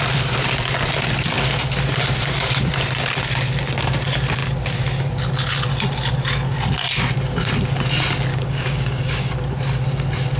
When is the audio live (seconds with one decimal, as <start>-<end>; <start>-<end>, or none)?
0.0-8.3; 9.3-10.4

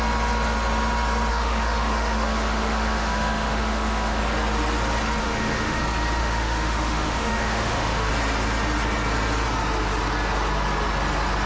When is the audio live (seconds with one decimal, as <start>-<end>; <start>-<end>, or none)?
0.0-1.3; 4.2-5.2; 5.8-6.2; 8.1-11.5

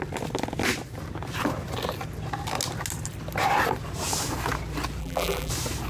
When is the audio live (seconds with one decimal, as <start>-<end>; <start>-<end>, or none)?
0.0-5.0; 5.5-5.9